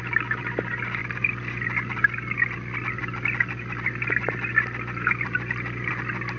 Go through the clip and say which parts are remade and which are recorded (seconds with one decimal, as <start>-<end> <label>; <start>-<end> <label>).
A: 0.0-6.4 recorded